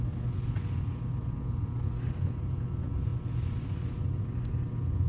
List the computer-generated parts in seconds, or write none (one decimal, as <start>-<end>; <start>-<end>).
none